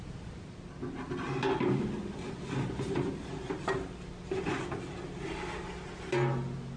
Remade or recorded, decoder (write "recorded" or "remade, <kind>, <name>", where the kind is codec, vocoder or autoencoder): recorded